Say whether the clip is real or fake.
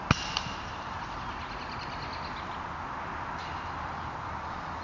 real